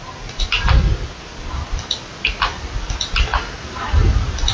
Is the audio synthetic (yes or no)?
no